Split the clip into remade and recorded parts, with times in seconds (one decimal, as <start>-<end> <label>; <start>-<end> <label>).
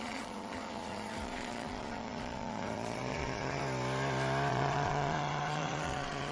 0.0-3.6 remade; 3.6-4.5 recorded; 4.5-6.3 remade